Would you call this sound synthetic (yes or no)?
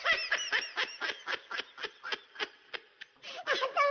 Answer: no